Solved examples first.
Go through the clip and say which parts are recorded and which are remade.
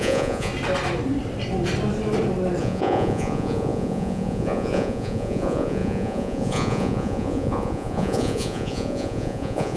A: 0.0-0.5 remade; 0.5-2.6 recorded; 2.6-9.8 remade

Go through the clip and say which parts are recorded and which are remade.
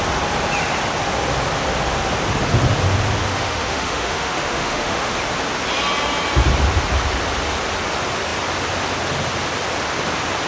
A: 0.0-3.2 recorded; 3.2-5.1 remade; 5.1-10.5 recorded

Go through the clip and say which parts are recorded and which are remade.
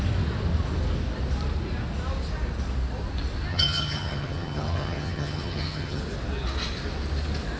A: 0.0-3.5 recorded; 3.5-6.0 remade; 6.0-7.6 recorded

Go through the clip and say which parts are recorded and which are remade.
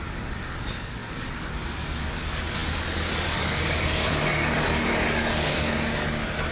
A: 0.0-6.5 remade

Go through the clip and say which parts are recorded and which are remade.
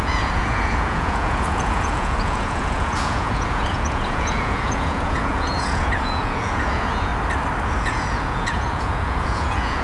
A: 0.0-7.1 remade; 7.1-7.8 recorded; 7.8-9.8 remade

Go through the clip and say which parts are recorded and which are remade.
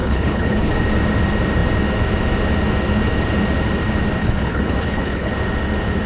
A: 0.0-0.7 remade; 0.7-4.2 recorded; 4.2-5.3 remade; 5.3-6.1 recorded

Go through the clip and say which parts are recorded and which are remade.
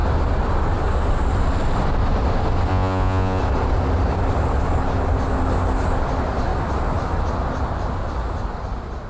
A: 0.0-2.7 recorded; 2.7-3.4 remade; 3.4-9.1 recorded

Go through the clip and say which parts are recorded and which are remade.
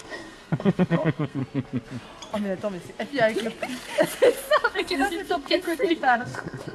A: 0.0-1.4 remade; 1.4-4.7 recorded; 4.7-6.7 remade